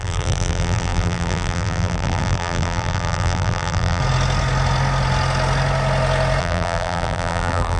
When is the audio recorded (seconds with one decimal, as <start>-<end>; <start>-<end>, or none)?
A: 4.0-6.4